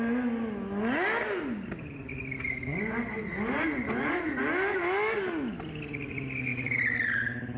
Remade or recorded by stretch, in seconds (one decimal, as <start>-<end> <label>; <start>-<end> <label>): 0.0-6.5 recorded; 6.5-7.6 remade